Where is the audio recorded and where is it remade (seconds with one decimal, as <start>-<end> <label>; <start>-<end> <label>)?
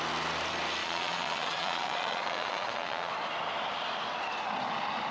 0.0-0.8 recorded; 0.8-3.1 remade; 3.1-5.1 recorded